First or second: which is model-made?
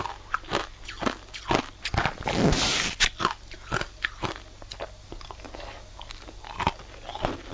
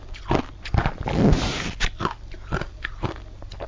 second